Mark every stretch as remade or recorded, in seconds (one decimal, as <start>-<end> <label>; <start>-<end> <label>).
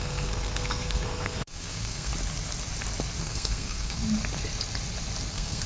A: 0.0-2.1 remade; 2.1-3.2 recorded; 3.2-4.0 remade; 4.0-5.3 recorded; 5.3-5.7 remade